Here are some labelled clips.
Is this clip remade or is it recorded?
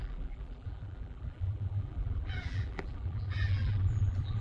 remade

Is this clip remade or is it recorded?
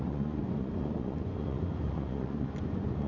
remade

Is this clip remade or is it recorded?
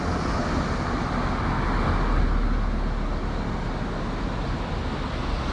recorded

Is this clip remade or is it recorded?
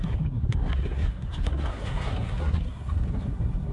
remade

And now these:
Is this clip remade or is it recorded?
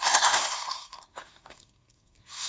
remade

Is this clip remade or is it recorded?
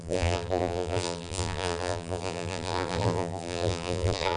remade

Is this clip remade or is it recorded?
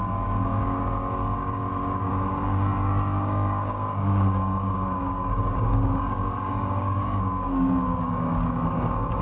remade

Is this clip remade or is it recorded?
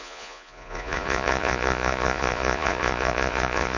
remade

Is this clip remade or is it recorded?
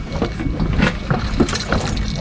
recorded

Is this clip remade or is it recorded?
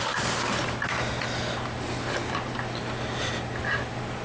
recorded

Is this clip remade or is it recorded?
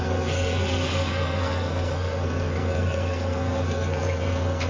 remade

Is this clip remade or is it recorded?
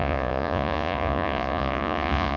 remade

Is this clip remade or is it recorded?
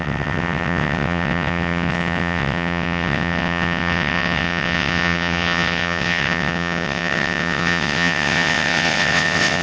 remade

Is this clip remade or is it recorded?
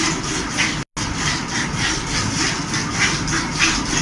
recorded